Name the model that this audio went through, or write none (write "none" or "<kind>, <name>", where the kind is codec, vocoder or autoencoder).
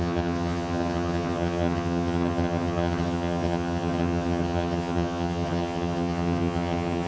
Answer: vocoder, HiFi-GAN